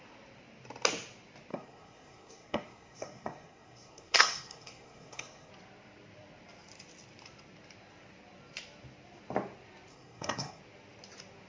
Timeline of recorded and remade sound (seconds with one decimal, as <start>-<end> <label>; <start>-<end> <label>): 0.0-1.5 recorded; 1.5-5.5 remade; 5.5-9.9 recorded; 9.9-10.6 remade; 10.6-11.5 recorded